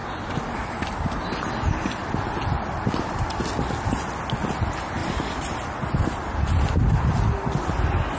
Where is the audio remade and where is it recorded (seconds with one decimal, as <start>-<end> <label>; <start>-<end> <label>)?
0.0-8.2 recorded